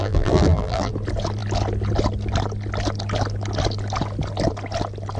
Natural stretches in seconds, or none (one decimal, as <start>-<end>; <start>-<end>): 0.9-5.2